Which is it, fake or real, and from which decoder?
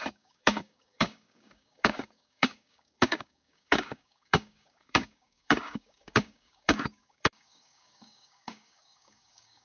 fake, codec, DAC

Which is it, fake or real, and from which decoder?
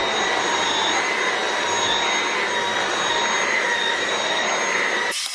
real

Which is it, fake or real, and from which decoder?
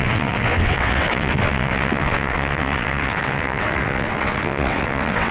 fake, vocoder, WaveNeXt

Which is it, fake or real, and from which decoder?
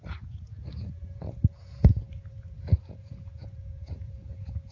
fake, vocoder, Vocos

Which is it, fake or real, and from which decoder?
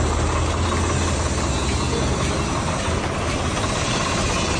real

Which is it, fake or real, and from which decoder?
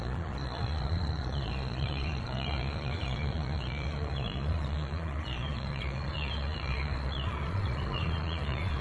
fake, vocoder, Vocos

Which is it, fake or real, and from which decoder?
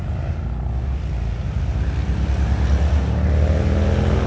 real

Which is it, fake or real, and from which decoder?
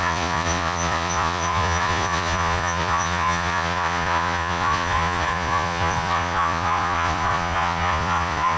fake, vocoder, Vocos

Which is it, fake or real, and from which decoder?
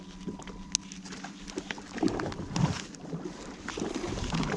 real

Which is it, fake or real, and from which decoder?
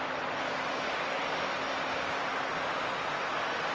real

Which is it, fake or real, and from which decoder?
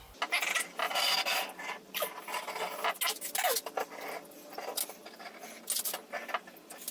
real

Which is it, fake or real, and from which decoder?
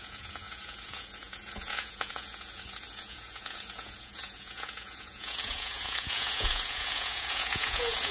fake, vocoder, Vocos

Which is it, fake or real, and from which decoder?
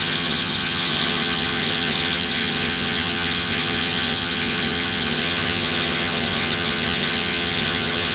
fake, vocoder, HiFi-GAN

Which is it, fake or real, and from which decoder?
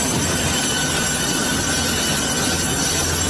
real